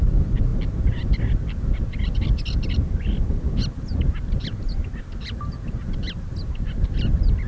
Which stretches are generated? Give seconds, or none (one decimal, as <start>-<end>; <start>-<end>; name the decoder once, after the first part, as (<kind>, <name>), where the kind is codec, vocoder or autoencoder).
none